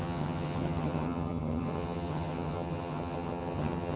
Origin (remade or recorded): remade